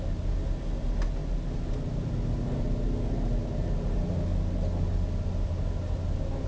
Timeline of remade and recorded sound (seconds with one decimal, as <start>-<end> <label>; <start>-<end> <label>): 0.0-6.5 recorded